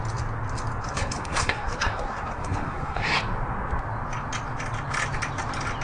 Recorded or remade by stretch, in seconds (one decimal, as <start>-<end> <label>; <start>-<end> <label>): 0.0-0.8 recorded; 0.8-3.2 remade; 3.2-5.8 recorded